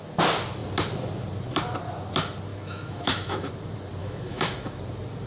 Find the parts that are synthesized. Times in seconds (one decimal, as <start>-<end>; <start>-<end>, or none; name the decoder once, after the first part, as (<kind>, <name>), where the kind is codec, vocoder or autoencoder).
2.5-3.5 (autoencoder, DAC-VAE); 4.0-4.8